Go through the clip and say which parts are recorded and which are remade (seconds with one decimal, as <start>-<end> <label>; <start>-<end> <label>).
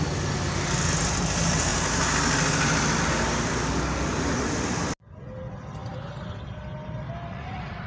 0.0-7.3 recorded; 7.3-7.9 remade